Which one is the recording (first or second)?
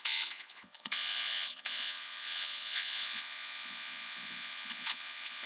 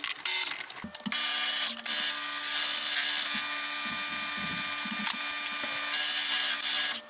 second